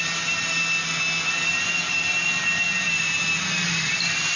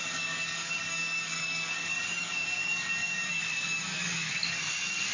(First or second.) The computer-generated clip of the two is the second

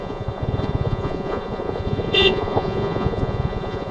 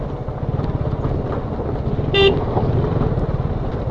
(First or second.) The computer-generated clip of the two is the first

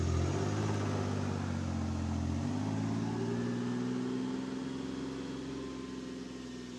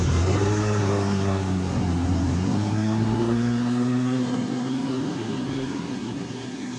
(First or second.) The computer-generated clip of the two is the second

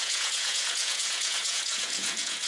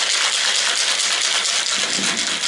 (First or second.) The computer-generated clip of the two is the first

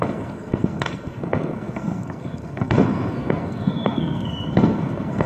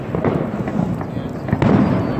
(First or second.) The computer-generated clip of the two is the first